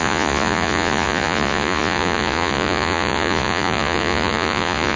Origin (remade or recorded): remade